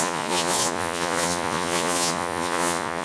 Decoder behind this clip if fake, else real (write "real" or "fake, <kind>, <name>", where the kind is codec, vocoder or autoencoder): fake, vocoder, Vocos